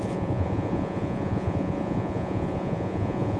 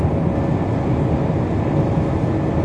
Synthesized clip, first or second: first